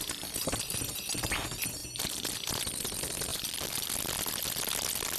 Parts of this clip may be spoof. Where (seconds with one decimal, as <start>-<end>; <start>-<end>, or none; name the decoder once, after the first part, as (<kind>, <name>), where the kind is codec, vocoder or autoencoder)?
1.8-2.3 (vocoder, BigVGAN v2); 3.3-3.9